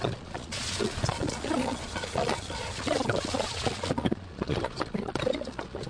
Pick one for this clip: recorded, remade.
remade